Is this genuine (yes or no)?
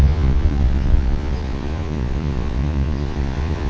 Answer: no